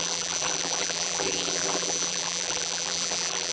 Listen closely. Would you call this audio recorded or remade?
remade